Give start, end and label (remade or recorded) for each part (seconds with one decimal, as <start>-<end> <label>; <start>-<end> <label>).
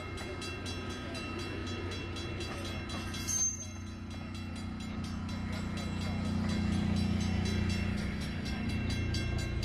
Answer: 0.0-7.9 recorded; 7.9-8.7 remade; 8.7-9.6 recorded